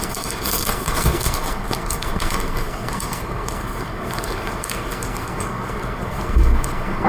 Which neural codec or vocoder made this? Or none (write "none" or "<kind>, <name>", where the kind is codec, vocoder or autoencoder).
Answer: codec, SNAC